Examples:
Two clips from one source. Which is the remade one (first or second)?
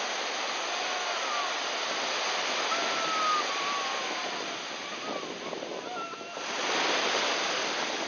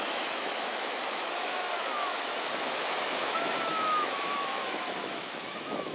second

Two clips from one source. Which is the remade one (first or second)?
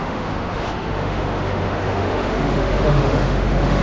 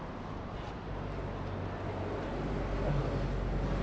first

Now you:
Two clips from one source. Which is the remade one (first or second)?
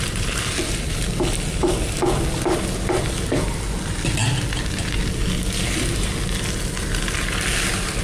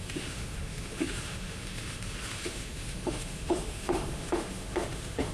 second